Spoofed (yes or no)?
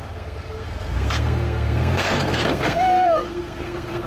yes